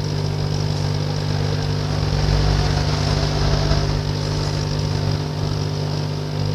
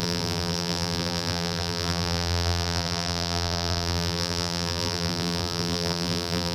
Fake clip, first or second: second